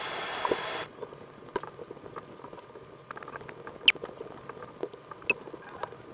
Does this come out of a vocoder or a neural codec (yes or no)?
no